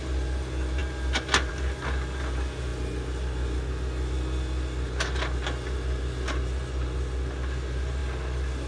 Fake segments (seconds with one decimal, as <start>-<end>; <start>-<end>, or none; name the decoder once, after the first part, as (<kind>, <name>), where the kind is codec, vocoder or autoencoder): none